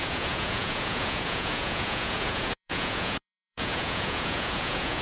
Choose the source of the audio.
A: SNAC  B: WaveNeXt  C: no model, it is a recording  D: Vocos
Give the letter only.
D